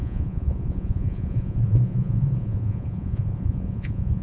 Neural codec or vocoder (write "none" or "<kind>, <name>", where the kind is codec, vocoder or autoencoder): vocoder, Vocos